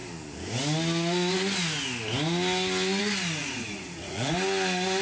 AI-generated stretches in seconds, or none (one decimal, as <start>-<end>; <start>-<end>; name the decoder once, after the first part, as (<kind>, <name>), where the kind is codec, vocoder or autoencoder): 3.4-4.3 (vocoder, Vocos)